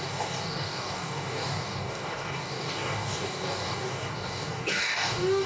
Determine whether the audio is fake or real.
fake